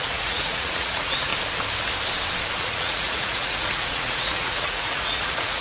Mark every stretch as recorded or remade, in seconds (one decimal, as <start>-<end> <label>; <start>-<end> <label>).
0.0-1.3 remade; 1.3-2.6 recorded; 2.6-5.6 remade